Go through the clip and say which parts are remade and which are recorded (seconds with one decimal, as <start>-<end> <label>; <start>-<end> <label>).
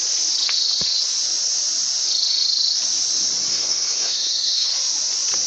0.0-3.5 recorded; 3.5-4.7 remade; 4.7-5.5 recorded